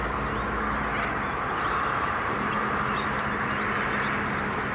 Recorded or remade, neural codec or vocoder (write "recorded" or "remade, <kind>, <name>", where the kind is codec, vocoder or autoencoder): recorded